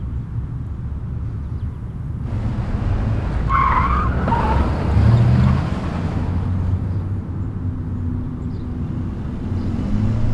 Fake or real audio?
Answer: real